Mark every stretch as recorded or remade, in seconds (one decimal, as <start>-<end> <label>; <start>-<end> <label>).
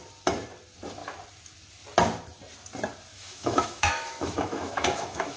0.0-3.1 recorded; 3.1-5.4 remade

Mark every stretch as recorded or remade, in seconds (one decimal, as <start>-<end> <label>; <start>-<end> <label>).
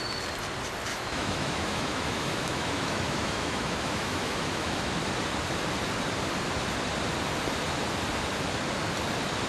0.0-0.9 recorded; 0.9-4.9 remade; 4.9-9.5 recorded